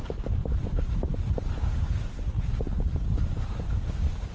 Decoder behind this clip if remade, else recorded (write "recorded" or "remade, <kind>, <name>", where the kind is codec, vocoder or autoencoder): remade, vocoder, BigVGAN v2